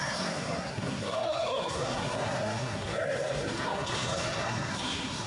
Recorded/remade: remade